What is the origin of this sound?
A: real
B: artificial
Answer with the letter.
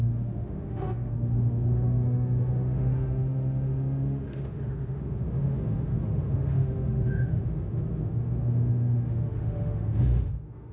B